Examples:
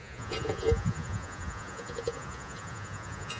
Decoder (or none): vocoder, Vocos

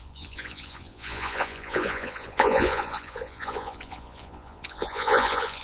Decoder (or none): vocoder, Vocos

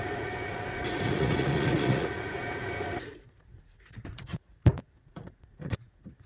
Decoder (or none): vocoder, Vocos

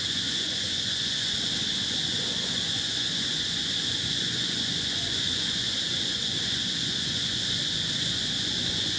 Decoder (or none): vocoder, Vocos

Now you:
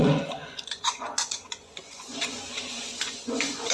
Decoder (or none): vocoder, Vocos